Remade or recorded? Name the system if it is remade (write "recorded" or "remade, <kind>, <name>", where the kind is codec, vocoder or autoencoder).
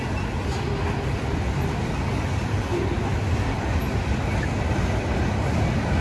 recorded